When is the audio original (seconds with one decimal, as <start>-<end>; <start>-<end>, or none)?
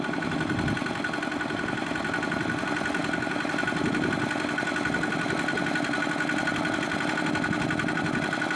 0.0-8.6